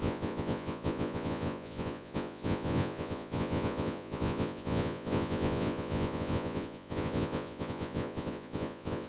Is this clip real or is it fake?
fake